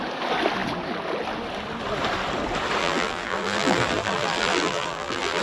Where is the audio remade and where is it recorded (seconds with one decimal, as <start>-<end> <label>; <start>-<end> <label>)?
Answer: 0.0-2.8 recorded; 2.8-5.4 remade